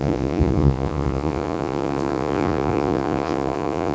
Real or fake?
fake